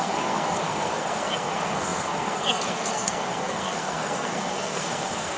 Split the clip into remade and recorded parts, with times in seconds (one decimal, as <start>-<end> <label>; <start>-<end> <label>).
0.0-5.4 remade